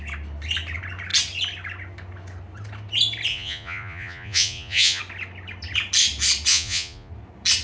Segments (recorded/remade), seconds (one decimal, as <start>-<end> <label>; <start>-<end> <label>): 0.0-3.3 recorded; 3.3-5.0 remade; 5.0-6.5 recorded; 6.5-7.1 remade; 7.1-7.6 recorded